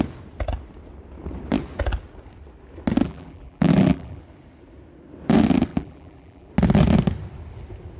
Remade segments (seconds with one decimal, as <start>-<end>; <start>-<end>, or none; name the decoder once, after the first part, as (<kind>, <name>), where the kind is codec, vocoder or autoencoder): 3.0-4.2 (vocoder, BigVGAN v2); 5.7-6.5

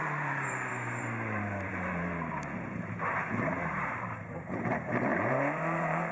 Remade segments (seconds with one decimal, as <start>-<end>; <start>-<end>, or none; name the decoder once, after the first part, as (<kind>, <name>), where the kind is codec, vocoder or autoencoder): 0.0-6.1 (vocoder, BigVGAN v2)

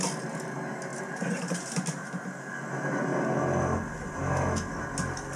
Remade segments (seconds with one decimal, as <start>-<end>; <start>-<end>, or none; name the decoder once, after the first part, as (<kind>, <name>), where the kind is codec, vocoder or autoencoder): 0.9-2.5 (vocoder, BigVGAN v2)

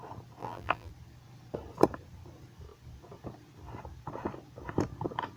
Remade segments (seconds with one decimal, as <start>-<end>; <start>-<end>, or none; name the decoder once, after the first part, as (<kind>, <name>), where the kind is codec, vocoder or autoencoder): 0.4-0.9 (vocoder, BigVGAN v2)

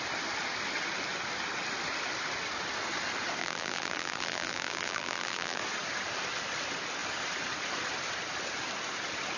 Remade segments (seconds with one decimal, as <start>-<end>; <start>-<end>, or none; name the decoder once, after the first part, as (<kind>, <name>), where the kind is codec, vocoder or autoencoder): 3.4-5.6 (vocoder, BigVGAN v2)

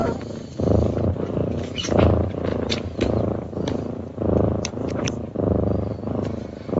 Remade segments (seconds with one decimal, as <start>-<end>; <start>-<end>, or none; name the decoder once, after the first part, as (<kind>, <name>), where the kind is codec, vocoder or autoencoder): 1.1-6.8 (vocoder, BigVGAN v2)

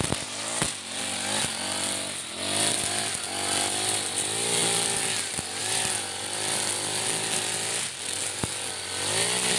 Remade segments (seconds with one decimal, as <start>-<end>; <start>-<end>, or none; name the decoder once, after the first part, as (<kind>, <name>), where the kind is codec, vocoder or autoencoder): none